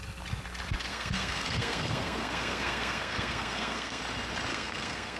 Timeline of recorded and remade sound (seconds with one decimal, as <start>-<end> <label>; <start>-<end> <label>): 0.0-0.9 recorded; 0.9-4.0 remade; 4.0-4.5 recorded; 4.5-5.2 remade

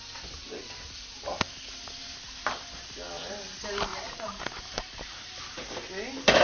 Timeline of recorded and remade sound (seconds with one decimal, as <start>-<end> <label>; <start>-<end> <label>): 0.0-3.9 recorded; 3.9-5.2 remade; 5.2-6.4 recorded

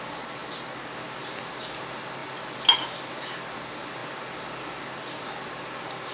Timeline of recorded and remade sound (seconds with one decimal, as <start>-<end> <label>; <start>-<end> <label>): 0.0-6.1 recorded

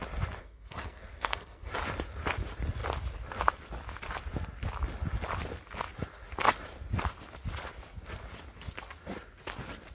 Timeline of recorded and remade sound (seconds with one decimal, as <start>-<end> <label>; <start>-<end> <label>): 0.0-0.4 recorded; 0.4-1.7 remade; 1.7-9.9 recorded